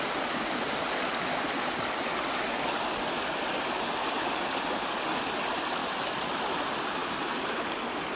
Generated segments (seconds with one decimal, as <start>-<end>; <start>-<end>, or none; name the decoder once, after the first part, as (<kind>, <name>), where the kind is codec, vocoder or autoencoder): none